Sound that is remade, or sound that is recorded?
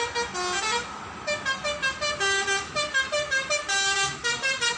recorded